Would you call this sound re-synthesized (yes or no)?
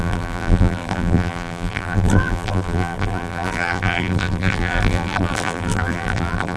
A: yes